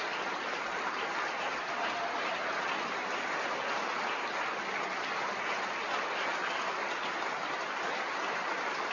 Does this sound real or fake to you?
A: real